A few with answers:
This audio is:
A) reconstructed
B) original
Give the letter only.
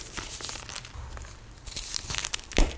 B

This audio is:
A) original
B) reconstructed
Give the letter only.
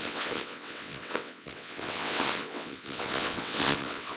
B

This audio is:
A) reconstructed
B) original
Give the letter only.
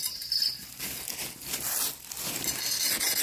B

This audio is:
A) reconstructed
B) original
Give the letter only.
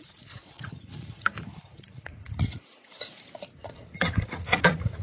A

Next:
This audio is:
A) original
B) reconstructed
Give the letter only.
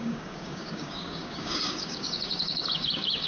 B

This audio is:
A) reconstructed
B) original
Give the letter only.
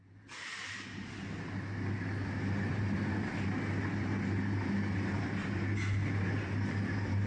B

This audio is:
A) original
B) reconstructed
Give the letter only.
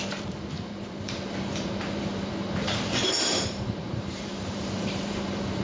B